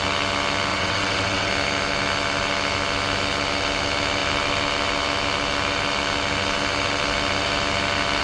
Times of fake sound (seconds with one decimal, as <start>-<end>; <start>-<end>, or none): 0.7-1.5